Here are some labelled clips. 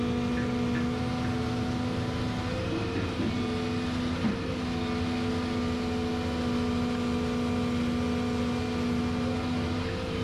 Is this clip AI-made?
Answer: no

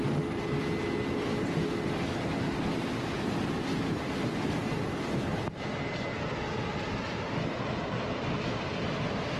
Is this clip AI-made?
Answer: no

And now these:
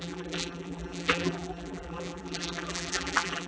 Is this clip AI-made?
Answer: yes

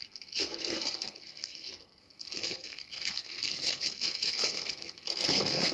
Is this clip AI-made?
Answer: yes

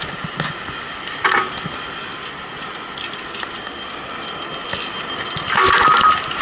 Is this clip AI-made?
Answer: no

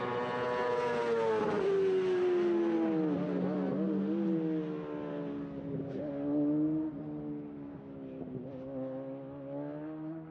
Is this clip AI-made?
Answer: no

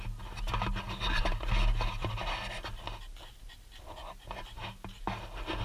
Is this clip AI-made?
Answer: no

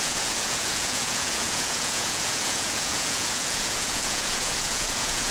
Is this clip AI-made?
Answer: yes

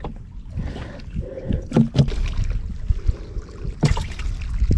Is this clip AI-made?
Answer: no